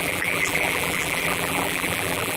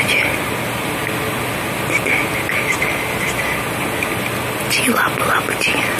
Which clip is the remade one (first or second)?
first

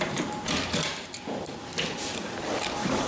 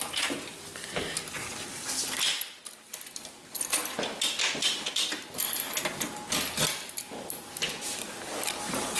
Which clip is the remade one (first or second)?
first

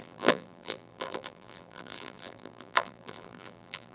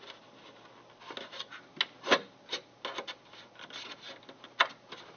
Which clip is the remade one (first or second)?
first